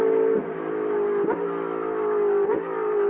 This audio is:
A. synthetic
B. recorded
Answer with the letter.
B